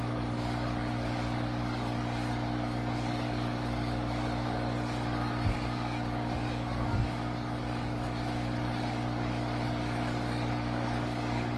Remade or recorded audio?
remade